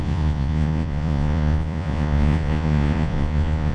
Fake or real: fake